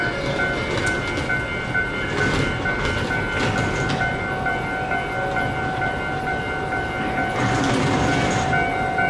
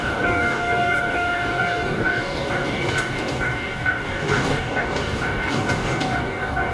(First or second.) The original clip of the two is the first